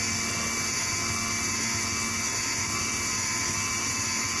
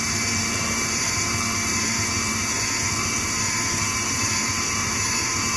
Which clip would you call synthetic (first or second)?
second